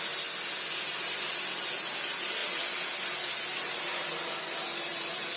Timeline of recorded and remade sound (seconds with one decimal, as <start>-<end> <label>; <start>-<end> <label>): 0.0-5.4 recorded